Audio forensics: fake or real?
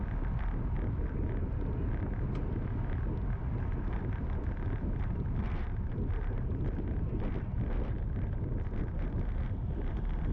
real